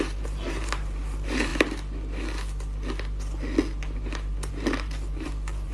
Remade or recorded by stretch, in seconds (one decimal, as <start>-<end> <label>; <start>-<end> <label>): 0.0-1.5 remade; 1.5-4.5 recorded; 4.5-5.7 remade